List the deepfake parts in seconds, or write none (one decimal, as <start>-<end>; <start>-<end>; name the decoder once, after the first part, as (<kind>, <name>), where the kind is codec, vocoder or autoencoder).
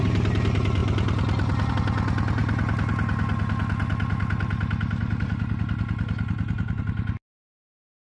none